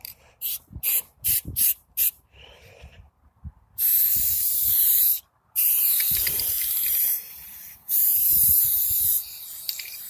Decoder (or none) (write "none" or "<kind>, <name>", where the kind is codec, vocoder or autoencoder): vocoder, BigVGAN v2